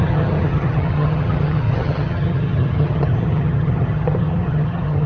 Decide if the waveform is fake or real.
fake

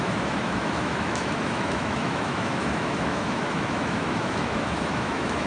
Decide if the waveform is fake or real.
fake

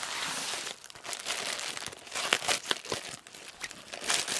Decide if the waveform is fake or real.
real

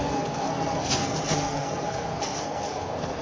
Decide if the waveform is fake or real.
fake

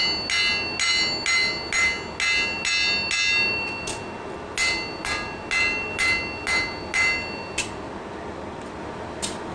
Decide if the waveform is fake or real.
real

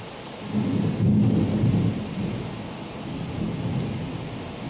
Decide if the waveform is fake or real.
real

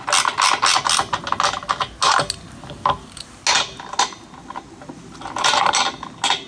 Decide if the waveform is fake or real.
real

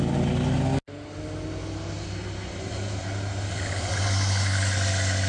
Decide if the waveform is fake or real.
real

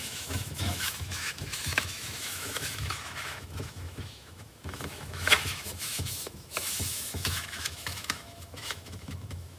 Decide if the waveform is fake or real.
fake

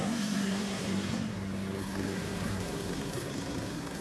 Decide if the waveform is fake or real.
fake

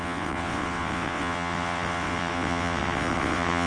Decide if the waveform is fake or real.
fake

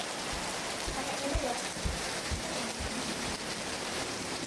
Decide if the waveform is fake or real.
fake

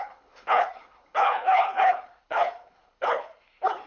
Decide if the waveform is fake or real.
fake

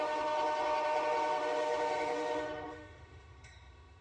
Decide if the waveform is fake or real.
fake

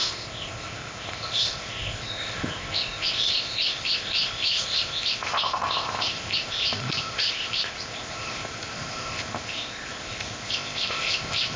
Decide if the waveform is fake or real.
fake